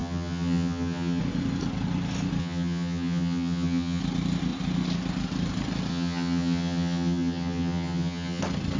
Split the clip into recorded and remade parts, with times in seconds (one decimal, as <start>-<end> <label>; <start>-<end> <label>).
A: 0.0-1.2 remade; 1.2-2.4 recorded; 2.4-4.0 remade; 4.0-5.9 recorded; 5.9-8.4 remade; 8.4-8.8 recorded